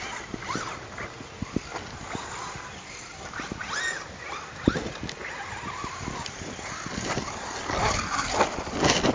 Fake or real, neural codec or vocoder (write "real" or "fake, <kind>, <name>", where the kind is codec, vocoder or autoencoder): real